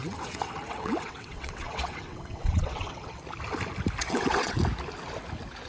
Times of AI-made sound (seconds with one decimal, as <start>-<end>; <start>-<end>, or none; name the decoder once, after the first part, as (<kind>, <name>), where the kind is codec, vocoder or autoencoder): 0.0-3.2 (vocoder, WaveNeXt); 4.0-4.6